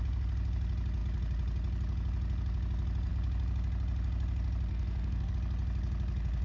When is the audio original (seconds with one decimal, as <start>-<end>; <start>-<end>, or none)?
0.0-4.7; 5.3-6.4